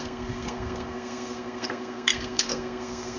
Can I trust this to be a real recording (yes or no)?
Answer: no